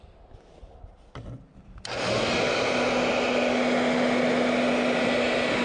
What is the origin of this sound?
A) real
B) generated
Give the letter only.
A